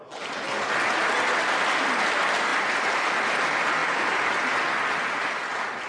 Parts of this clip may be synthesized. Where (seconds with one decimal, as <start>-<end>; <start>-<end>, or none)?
none

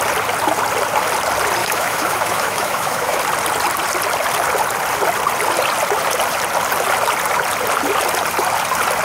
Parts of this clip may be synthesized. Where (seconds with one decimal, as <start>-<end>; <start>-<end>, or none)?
1.6-3.2

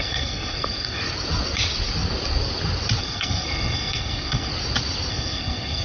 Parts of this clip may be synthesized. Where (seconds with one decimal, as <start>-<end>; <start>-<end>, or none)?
0.0-1.0; 3.0-4.5; 5.1-5.8

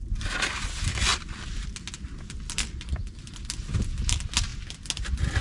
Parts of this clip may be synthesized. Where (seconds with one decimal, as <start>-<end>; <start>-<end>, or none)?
none

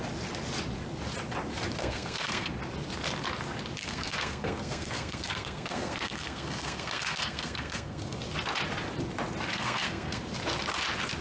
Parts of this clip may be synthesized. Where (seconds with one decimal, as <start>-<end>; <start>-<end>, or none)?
1.8-2.5; 3.8-8.2; 9.5-10.2